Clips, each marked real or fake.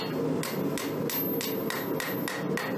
real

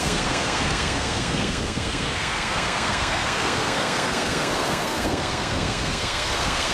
fake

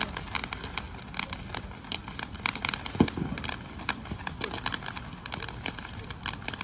real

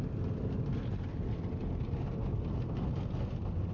real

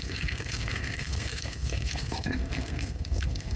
fake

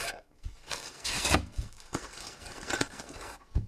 fake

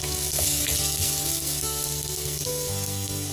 fake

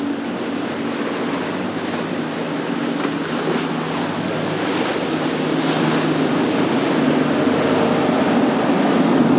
real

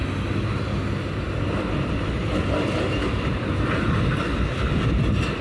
real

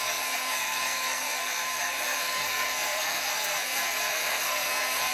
fake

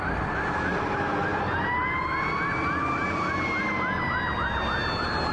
real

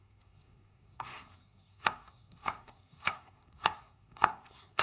fake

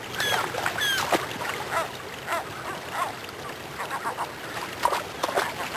real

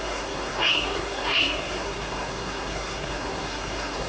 fake